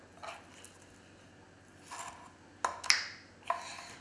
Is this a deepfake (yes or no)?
no